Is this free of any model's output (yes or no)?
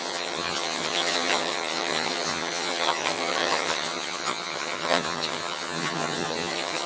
no